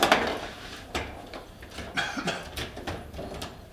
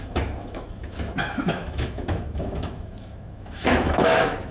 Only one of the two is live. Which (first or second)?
first